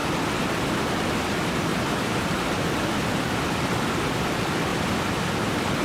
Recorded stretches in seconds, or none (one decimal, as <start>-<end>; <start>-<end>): 0.0-1.7; 4.0-4.7